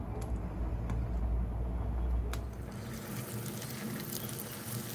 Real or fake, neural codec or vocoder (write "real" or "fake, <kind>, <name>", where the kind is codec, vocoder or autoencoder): real